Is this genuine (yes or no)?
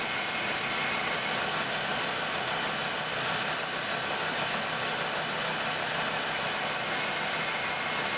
yes